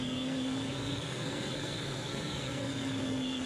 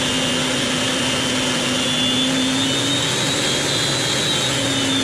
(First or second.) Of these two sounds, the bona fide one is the second